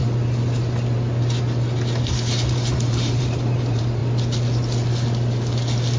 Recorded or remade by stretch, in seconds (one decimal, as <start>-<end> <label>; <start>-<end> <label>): 0.0-2.0 recorded; 2.0-4.0 remade; 4.0-6.0 recorded